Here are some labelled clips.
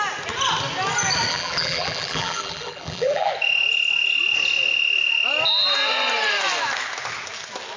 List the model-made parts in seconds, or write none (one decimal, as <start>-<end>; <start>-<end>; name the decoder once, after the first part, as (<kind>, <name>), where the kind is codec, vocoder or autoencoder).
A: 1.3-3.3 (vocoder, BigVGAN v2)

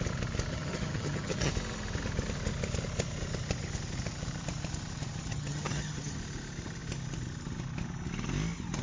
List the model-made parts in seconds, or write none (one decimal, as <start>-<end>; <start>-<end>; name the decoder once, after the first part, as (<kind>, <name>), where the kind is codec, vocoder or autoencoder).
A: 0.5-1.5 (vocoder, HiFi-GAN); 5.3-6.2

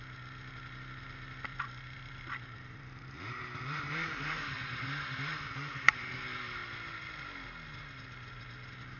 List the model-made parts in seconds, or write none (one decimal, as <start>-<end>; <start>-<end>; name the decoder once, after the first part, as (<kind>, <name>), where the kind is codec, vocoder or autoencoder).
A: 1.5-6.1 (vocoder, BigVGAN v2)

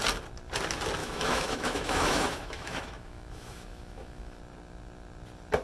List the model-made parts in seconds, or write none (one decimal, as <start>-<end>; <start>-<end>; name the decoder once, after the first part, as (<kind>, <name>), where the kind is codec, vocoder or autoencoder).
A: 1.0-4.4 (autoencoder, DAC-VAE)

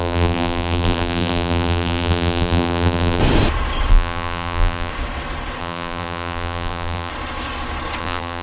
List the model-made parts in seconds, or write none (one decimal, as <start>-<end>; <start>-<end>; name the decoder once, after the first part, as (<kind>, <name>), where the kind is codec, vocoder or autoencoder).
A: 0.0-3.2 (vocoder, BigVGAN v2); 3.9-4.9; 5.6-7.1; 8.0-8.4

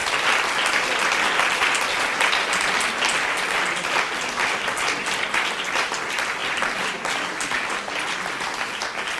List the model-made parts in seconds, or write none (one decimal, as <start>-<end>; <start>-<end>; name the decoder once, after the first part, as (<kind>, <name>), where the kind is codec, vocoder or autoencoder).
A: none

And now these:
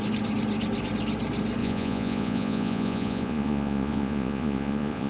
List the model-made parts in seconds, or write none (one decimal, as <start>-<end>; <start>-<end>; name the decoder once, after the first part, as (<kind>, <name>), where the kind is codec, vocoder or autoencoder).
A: 1.6-5.1 (vocoder, Vocos)